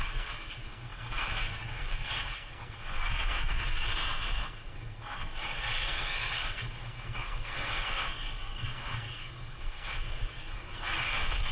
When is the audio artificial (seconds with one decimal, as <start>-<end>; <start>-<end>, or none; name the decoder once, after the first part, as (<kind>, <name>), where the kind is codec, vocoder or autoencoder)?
0.0-11.5 (codec, SNAC)